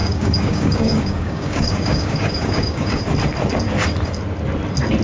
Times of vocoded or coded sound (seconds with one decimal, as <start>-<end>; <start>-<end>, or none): 0.0-3.0